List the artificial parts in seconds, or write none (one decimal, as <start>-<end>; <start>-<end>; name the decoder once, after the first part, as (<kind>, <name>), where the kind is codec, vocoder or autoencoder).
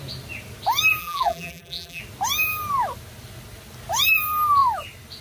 1.0-2.0 (vocoder, BigVGAN v2)